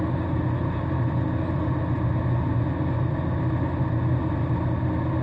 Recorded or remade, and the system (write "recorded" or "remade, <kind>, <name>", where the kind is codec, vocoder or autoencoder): recorded